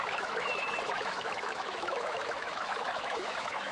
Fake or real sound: fake